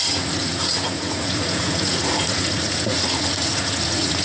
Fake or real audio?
fake